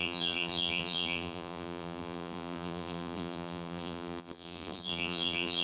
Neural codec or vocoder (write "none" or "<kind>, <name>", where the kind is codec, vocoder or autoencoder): vocoder, BigVGAN v2